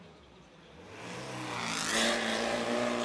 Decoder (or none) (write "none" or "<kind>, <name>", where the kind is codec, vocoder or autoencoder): none